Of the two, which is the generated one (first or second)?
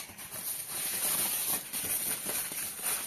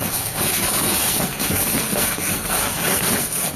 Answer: second